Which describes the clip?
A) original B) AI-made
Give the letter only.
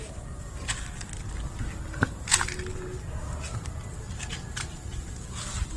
A